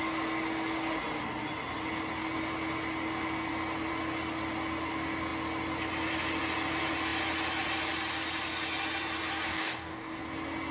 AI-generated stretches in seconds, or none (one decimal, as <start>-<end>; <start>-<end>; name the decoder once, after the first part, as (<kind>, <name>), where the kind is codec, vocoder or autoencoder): 9.5-10.2 (codec, DAC)